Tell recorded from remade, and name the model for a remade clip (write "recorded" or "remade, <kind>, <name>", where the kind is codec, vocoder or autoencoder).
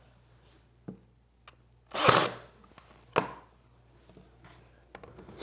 recorded